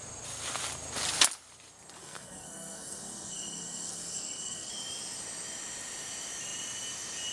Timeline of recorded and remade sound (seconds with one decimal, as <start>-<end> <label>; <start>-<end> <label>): 0.0-2.0 recorded; 2.0-4.7 remade; 4.7-7.3 recorded